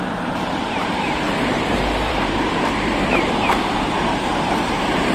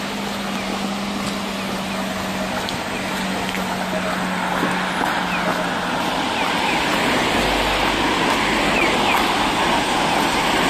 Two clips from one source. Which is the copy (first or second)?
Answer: first